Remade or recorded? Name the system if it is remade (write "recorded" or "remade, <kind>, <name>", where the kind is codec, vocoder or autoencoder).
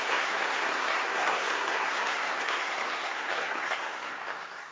remade, codec, SNAC